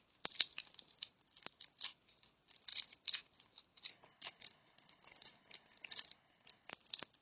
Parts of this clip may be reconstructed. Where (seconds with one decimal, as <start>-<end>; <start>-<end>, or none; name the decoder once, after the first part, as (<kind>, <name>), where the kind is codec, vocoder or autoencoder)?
3.9-6.7 (codec, HILCodec)